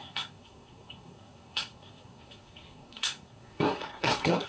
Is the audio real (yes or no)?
no